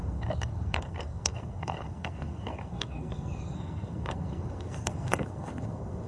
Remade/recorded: remade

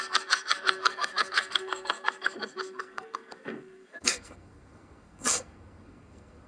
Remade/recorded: remade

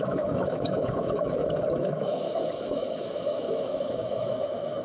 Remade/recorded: remade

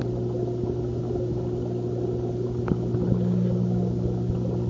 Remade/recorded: recorded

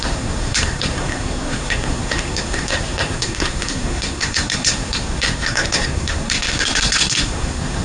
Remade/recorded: remade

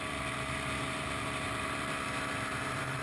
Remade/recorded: remade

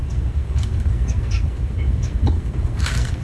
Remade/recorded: remade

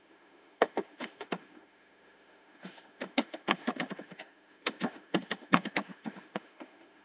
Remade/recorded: remade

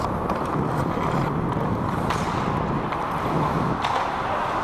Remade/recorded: recorded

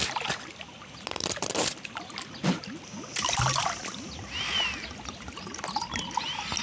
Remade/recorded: recorded